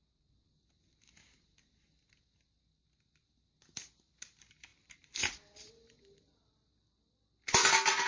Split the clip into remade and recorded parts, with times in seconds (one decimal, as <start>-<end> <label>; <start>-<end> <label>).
0.0-8.1 recorded

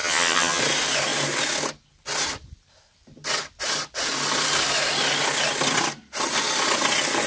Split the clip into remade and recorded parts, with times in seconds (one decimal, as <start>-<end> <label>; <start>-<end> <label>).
0.0-0.6 remade; 0.6-7.3 recorded

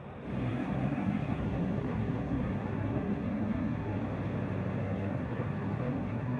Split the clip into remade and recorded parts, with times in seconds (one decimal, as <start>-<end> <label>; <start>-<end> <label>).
0.0-0.4 recorded; 0.4-4.0 remade; 4.0-4.8 recorded; 4.8-6.4 remade

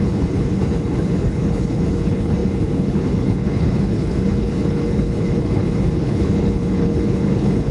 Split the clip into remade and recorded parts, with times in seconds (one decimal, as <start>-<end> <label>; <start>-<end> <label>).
0.0-7.7 remade

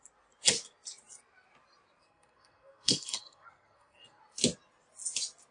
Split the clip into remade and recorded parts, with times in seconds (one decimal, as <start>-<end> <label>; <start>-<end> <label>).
0.0-2.0 recorded; 2.0-4.2 remade; 4.2-5.5 recorded

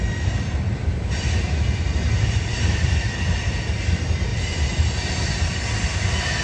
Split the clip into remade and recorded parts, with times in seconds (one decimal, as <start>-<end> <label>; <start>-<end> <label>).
0.0-1.9 recorded; 1.9-3.8 remade; 3.8-4.3 recorded; 4.3-5.6 remade; 5.6-6.4 recorded

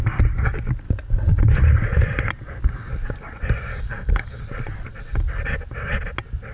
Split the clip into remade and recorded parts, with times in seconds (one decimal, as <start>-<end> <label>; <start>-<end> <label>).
0.0-3.7 recorded; 3.7-4.4 remade; 4.4-6.5 recorded

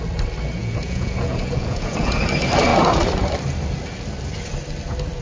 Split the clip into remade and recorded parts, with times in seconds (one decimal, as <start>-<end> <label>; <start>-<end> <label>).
0.0-0.6 recorded; 0.6-2.2 remade; 2.2-5.2 recorded